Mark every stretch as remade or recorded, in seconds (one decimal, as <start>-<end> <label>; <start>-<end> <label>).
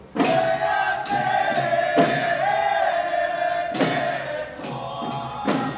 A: 0.0-5.8 recorded